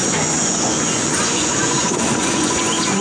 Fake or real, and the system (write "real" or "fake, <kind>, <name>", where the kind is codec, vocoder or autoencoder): fake, vocoder, Vocos